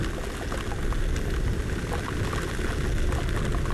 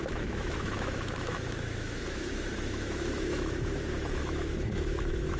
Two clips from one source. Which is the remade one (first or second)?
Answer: second